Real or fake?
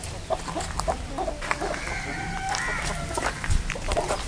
real